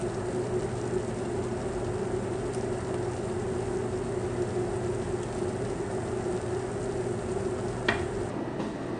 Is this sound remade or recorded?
recorded